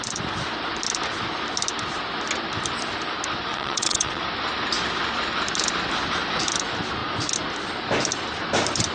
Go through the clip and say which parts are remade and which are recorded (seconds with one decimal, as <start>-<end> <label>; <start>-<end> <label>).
0.0-3.5 recorded; 3.5-4.2 remade; 4.2-8.9 recorded